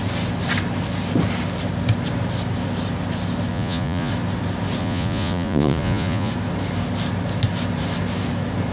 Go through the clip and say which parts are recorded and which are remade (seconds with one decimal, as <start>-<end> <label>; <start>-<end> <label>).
0.0-3.5 recorded; 3.5-4.1 remade; 4.1-4.8 recorded; 4.8-6.3 remade; 6.3-8.7 recorded